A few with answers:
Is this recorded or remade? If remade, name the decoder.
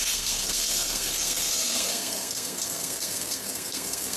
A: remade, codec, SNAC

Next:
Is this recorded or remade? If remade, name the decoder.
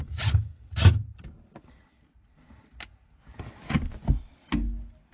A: recorded